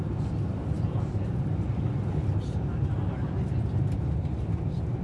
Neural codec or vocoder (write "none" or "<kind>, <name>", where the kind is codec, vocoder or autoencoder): none